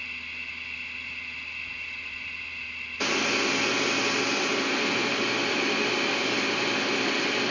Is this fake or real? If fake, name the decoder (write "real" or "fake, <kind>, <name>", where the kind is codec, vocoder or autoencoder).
real